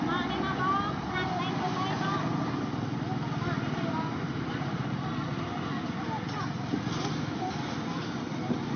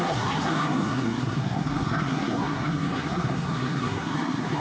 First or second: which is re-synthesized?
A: second